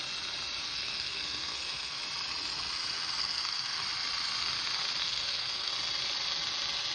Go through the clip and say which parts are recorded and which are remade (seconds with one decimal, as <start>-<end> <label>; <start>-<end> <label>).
0.0-0.6 recorded; 0.6-2.0 remade; 2.0-3.2 recorded; 3.2-3.8 remade; 3.8-5.0 recorded; 5.0-5.7 remade; 5.7-6.9 recorded